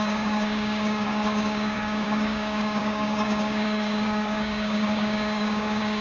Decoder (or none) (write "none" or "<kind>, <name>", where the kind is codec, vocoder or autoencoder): codec, DAC